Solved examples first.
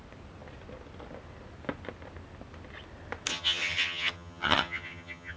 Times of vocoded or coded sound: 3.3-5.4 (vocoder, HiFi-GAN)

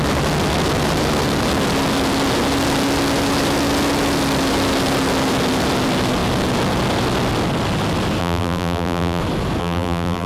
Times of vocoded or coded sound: 8.2-9.2 (vocoder, BigVGAN v2); 9.6-10.3

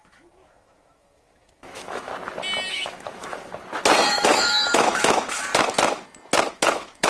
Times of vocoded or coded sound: 0.0-2.1 (autoencoder, DAC-VAE); 2.7-3.5; 4.1-5.5; 6.5-7.1